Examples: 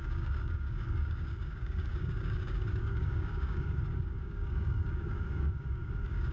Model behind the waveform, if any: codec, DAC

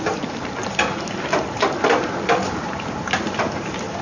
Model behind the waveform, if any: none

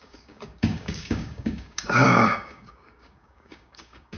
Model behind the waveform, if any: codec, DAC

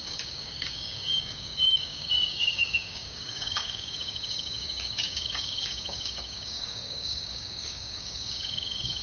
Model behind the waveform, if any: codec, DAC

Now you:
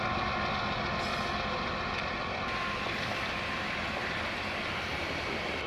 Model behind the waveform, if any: none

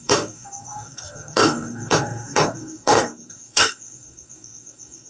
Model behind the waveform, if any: codec, DAC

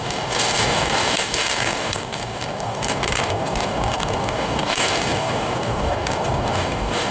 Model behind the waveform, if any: codec, DAC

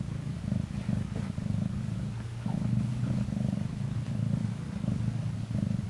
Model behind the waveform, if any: codec, DAC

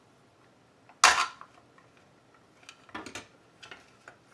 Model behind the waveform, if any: none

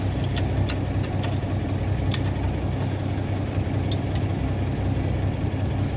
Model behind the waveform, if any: none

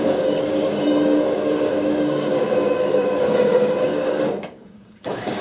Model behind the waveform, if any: codec, DAC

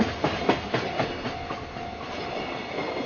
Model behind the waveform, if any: none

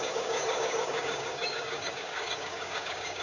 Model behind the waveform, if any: codec, DAC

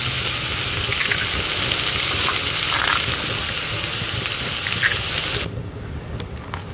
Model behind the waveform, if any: none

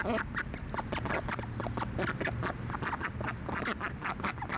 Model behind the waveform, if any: none